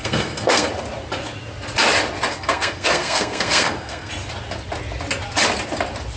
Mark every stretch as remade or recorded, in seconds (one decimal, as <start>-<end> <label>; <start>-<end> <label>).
0.0-0.7 remade; 0.7-2.3 recorded; 2.3-4.1 remade; 4.1-6.2 recorded